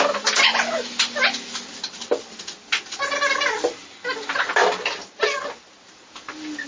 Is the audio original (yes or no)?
yes